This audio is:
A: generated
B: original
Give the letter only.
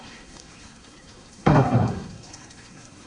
A